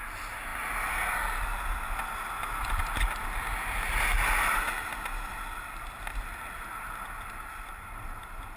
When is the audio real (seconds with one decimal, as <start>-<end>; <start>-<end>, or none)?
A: 0.0-8.6

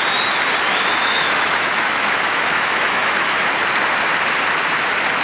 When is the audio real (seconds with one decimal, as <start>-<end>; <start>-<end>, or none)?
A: 0.0-0.7; 3.4-5.2

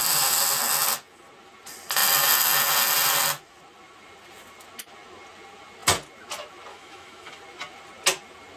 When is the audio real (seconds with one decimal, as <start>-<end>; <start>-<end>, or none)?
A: 0.0-6.7; 7.4-8.6